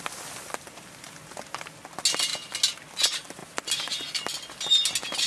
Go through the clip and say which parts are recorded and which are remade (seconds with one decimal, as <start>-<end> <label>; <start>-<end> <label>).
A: 0.0-5.3 recorded